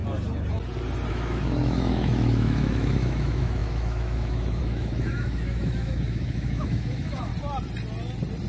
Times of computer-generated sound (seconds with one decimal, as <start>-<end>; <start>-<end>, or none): 1.1-7.3